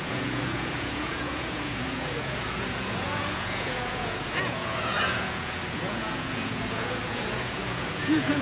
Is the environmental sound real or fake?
fake